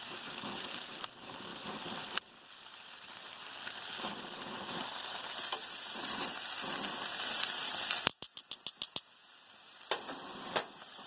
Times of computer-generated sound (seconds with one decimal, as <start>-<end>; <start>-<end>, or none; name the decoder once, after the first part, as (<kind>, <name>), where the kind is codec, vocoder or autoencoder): none